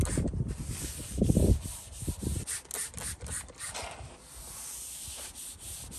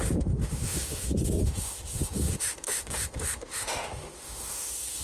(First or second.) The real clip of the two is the first